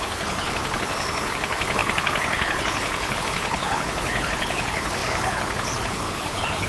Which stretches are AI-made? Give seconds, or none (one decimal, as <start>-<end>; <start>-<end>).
0.0-6.7